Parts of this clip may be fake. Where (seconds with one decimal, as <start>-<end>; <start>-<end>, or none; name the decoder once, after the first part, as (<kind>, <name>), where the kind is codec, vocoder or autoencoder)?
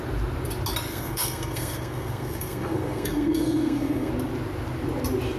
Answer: 0.9-4.1 (codec, SNAC)